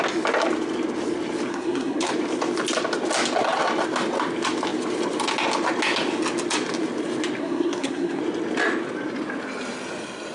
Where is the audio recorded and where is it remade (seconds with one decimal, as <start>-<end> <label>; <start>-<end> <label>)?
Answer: 0.0-1.5 recorded; 1.5-2.1 remade; 2.1-7.4 recorded; 7.4-8.2 remade; 8.2-10.3 recorded